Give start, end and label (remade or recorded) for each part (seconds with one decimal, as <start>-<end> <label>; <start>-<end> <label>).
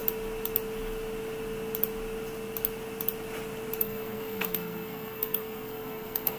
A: 0.0-3.8 recorded; 3.8-6.4 remade